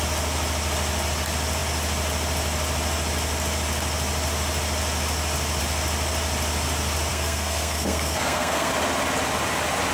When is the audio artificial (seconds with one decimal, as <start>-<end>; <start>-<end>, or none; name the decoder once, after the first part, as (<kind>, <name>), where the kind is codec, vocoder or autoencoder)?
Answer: 7.1-8.7 (codec, SNAC)